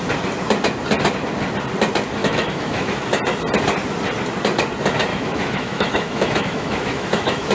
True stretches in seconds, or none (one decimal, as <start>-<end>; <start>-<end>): 0.0-2.2; 3.0-5.1